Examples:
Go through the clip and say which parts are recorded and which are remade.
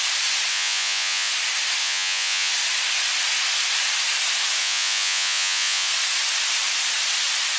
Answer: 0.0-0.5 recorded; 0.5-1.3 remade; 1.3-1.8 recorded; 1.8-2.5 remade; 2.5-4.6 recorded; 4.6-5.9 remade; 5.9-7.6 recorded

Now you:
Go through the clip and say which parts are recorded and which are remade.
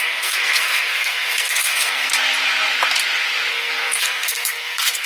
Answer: 0.0-2.1 remade; 2.1-3.5 recorded; 3.5-5.1 remade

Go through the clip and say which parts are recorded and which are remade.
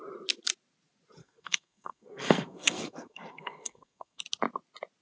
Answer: 0.0-1.2 recorded; 1.2-4.2 remade; 4.2-5.0 recorded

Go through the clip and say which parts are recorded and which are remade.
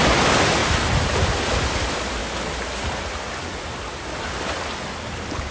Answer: 0.0-5.5 recorded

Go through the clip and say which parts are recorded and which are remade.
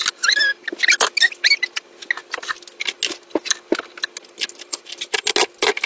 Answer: 0.0-5.9 recorded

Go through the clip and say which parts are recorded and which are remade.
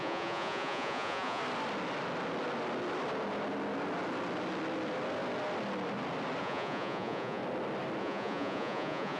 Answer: 0.0-1.4 remade; 1.4-6.4 recorded; 6.4-7.4 remade; 7.4-8.0 recorded; 8.0-9.2 remade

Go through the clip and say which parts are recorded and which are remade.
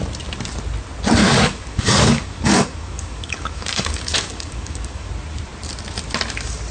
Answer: 0.0-1.2 recorded; 1.2-5.1 remade; 5.1-6.7 recorded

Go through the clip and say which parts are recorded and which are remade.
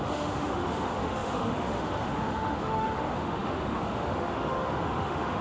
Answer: 0.0-5.4 remade